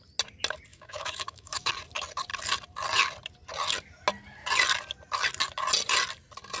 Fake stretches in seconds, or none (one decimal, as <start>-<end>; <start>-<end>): 0.7-1.7